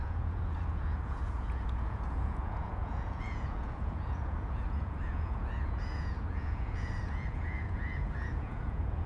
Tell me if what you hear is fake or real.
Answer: fake